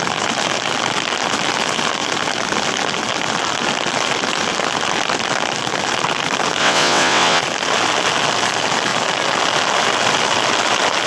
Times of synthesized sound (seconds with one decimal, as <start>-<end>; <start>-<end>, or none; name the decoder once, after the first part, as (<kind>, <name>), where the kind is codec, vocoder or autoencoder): 6.6-7.4 (vocoder, WaveNeXt)